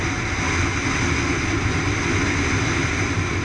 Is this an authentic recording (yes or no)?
yes